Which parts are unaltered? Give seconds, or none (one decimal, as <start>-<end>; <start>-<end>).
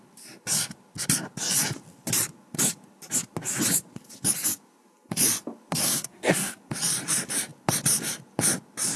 0.0-5.8; 6.6-9.0